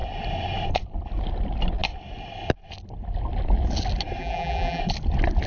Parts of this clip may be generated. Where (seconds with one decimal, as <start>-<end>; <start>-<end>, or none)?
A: 4.2-4.8